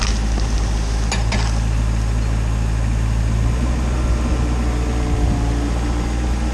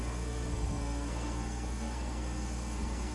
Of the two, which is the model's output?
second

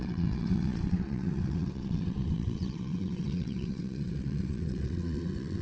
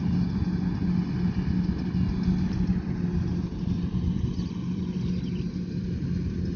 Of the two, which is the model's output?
first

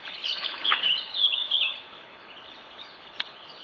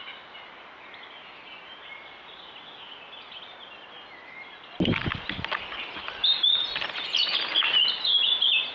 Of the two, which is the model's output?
first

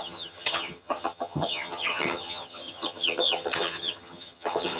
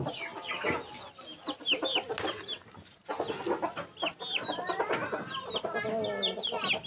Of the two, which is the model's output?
first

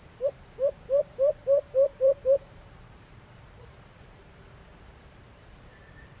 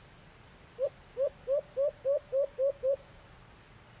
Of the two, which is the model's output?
first